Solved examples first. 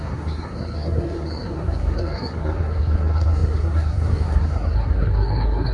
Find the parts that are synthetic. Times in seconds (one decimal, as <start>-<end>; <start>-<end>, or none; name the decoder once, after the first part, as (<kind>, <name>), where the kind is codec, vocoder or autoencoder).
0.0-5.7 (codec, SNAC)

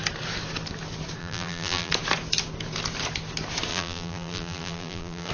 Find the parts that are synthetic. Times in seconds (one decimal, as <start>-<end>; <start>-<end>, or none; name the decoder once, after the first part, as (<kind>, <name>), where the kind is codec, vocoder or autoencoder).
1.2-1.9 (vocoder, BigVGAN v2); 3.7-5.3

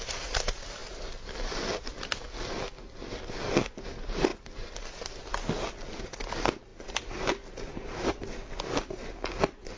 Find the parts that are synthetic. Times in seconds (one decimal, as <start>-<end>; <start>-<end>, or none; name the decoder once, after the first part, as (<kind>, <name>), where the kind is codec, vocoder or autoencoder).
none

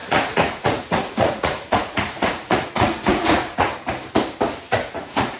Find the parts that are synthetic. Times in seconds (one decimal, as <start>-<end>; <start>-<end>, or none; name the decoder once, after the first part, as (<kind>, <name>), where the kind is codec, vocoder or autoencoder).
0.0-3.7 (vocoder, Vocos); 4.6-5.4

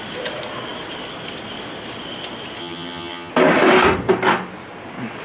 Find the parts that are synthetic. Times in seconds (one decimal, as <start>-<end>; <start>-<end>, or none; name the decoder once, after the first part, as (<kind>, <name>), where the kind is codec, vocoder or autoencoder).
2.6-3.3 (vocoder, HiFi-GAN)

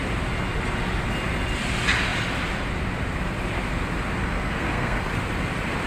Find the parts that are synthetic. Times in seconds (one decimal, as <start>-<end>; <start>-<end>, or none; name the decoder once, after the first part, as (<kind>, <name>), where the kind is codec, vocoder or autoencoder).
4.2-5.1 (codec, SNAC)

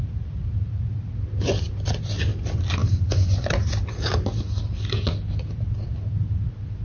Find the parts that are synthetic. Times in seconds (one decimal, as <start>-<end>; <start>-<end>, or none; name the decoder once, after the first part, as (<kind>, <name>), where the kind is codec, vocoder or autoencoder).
none

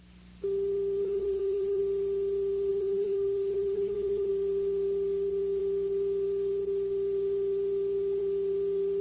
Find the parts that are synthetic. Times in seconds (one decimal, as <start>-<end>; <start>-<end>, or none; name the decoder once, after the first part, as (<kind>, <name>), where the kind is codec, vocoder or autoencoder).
1.0-1.8 (codec, SNAC); 2.7-4.3